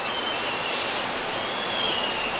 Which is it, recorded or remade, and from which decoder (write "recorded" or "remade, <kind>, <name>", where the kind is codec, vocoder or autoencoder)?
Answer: remade, vocoder, Vocos